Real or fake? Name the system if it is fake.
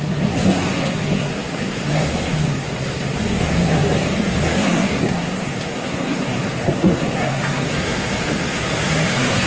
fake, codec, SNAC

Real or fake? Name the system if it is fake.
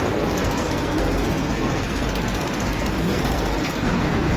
fake, codec, SNAC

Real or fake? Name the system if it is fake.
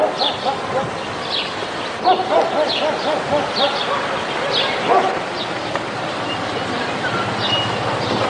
real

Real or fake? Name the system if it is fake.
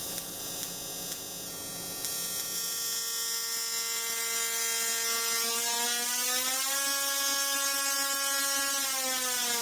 real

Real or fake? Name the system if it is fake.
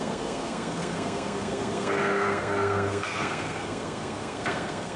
fake, codec, SNAC